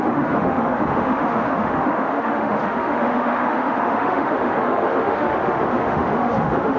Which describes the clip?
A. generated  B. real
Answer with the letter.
A